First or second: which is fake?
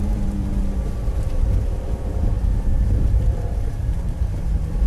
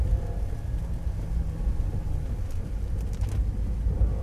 first